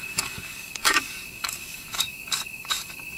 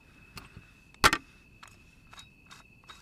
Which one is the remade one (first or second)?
first